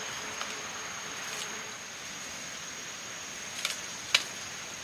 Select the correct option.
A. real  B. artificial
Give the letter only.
A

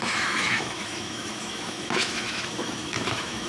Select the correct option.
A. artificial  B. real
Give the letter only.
A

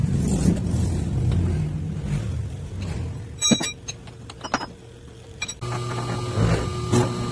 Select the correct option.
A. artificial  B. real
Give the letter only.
B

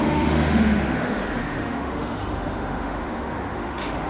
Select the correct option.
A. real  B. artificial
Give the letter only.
B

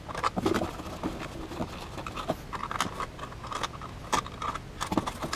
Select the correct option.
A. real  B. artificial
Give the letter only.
A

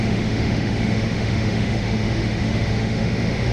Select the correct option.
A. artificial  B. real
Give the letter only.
A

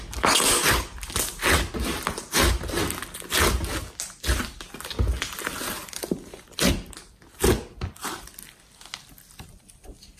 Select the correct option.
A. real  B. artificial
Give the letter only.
A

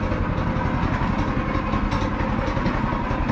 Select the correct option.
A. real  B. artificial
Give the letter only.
A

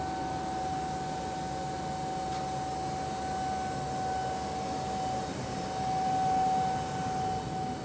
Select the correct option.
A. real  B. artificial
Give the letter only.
A